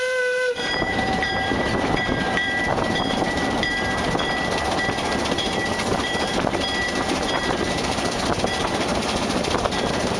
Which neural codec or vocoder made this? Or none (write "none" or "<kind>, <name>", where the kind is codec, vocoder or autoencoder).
vocoder, BigVGAN v2